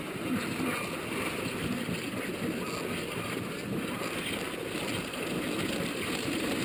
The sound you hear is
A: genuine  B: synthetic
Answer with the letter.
A